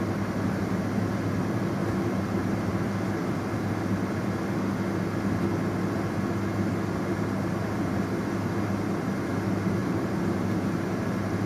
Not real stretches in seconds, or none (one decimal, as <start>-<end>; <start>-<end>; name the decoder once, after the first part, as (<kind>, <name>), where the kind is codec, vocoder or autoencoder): 1.8-2.7 (vocoder, BigVGAN v2); 9.8-11.0